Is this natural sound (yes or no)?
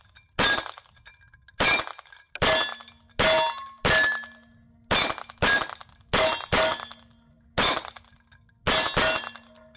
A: yes